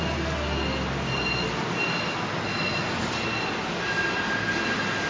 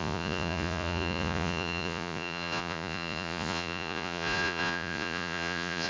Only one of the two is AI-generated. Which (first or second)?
second